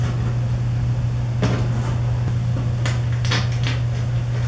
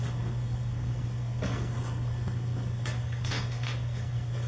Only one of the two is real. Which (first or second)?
first